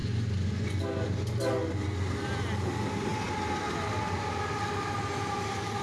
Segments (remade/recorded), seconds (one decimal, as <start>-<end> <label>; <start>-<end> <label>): 0.0-5.8 recorded